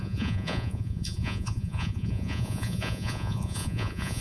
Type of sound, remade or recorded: remade